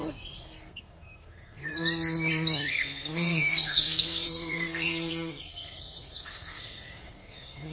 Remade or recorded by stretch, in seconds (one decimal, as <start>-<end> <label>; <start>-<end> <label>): 0.0-1.7 remade; 1.7-2.7 recorded; 2.7-7.7 remade